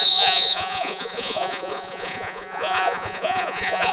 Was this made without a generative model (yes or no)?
no